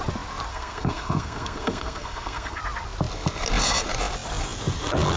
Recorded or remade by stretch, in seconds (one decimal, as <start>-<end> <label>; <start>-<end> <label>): 0.0-0.5 recorded; 0.5-2.6 remade; 2.6-5.2 recorded